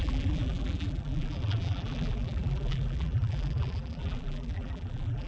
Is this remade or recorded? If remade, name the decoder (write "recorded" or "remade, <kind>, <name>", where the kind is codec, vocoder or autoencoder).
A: remade, vocoder, BigVGAN v2